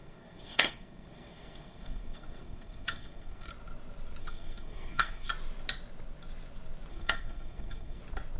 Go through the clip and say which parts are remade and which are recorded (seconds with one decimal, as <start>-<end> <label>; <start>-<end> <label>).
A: 0.0-3.5 remade; 3.5-4.2 recorded; 4.2-5.3 remade; 5.3-6.9 recorded; 6.9-8.0 remade; 8.0-8.4 recorded